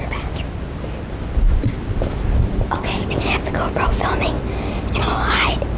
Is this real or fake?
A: real